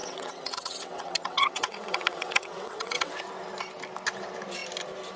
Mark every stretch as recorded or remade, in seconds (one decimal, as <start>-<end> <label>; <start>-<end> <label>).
0.0-3.1 remade; 3.1-5.2 recorded